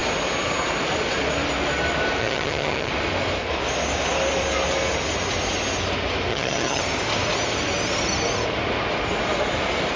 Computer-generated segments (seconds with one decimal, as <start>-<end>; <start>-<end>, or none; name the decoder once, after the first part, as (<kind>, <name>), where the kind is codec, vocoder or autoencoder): 2.2-2.9 (vocoder, HiFi-GAN); 6.3-6.8